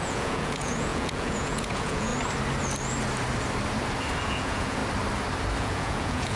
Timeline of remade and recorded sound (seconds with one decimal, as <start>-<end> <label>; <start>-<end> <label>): 0.0-2.1 remade; 2.1-4.2 recorded; 4.2-4.8 remade; 4.8-5.6 recorded; 5.6-6.4 remade

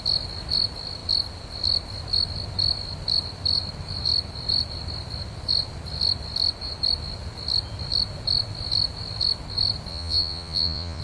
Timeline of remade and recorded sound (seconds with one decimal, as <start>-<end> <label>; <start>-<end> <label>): 0.0-9.9 recorded; 9.9-11.0 remade

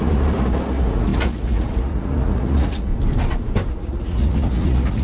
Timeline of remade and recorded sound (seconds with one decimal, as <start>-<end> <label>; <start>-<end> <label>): 0.0-2.9 remade; 2.9-3.7 recorded; 3.7-5.0 remade

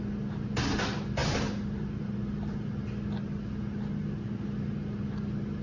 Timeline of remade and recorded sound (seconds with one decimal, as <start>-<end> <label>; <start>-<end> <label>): 0.0-5.6 recorded

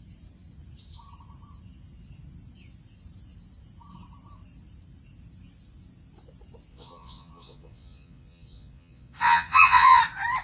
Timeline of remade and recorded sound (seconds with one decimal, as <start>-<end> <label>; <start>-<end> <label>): 0.0-6.7 recorded; 6.7-10.0 remade; 10.0-10.4 recorded

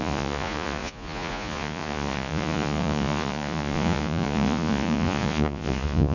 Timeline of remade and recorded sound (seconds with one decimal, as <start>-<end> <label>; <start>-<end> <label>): 0.0-6.1 remade

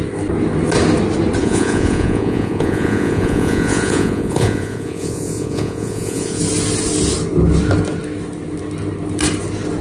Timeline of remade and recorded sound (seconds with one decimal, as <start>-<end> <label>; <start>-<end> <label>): 0.0-1.4 recorded; 1.4-6.4 remade; 6.4-9.8 recorded

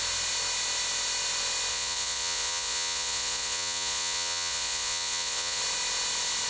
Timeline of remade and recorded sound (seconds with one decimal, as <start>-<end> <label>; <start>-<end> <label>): 0.0-1.7 recorded; 1.7-5.6 remade; 5.6-6.5 recorded